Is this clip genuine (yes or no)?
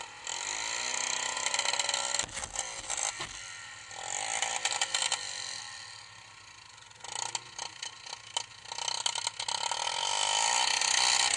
yes